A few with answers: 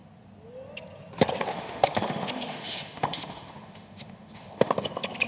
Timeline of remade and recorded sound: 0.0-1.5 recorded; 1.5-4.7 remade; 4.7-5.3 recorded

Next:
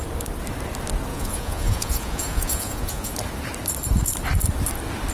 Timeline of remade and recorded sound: 0.0-1.1 recorded; 1.1-3.1 remade; 3.1-5.1 recorded

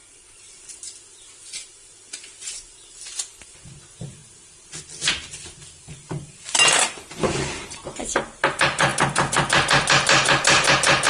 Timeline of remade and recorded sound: 0.0-11.1 recorded

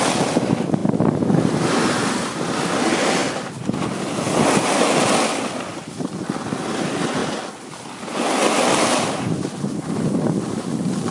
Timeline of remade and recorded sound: 0.0-0.8 recorded; 0.8-2.7 remade; 2.7-11.1 recorded

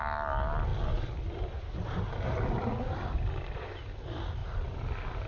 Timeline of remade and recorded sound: 0.0-5.3 recorded

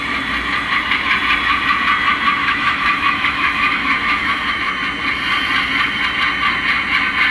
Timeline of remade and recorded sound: 0.0-2.4 recorded; 2.4-4.7 remade; 4.7-7.3 recorded

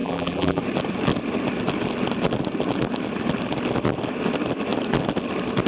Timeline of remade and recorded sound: 0.0-0.6 remade; 0.6-5.7 recorded